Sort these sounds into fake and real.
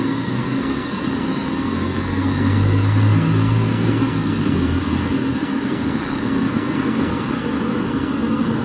fake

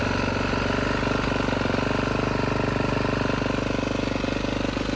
real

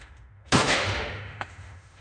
fake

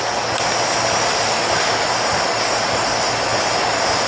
real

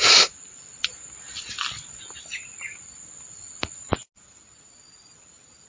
real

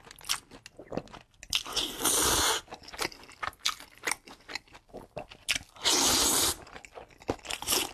real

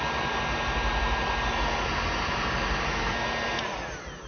real